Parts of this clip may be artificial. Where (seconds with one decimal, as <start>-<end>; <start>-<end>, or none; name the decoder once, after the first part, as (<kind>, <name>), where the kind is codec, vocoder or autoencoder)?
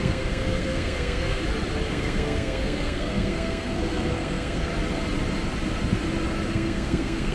0.0-1.4 (codec, SNAC); 1.9-4.7; 6.5-7.3